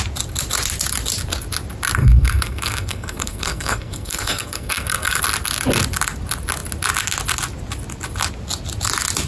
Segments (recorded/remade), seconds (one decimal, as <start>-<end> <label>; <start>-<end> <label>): 0.0-2.0 recorded; 2.0-5.2 remade; 5.2-9.3 recorded